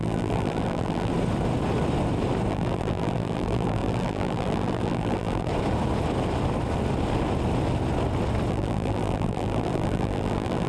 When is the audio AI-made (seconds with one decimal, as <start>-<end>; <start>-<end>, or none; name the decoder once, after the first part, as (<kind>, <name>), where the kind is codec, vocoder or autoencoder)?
0.0-1.1 (vocoder, BigVGAN v2); 2.5-5.5; 8.5-10.7